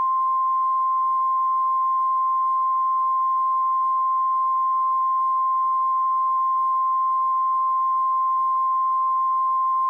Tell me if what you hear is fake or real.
real